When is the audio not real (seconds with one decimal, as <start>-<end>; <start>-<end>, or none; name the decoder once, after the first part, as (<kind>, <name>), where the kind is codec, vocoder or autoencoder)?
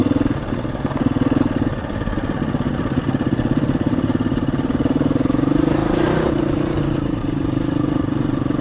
4.7-8.6 (vocoder, BigVGAN v2)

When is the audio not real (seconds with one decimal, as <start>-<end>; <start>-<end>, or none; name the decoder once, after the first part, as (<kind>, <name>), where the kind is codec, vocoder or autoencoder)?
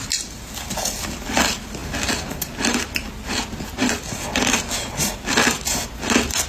0.0-6.5 (vocoder, BigVGAN v2)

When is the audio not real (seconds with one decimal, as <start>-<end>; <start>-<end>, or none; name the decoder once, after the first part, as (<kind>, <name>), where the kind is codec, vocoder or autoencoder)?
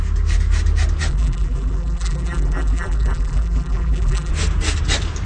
1.1-4.3 (vocoder, BigVGAN v2)